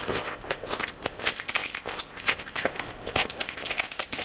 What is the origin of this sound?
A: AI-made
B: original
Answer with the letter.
A